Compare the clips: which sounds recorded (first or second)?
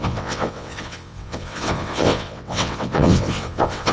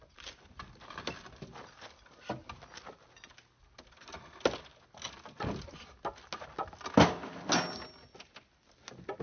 second